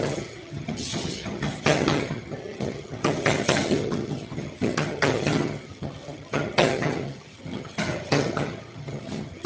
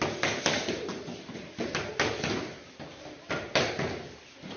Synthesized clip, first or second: first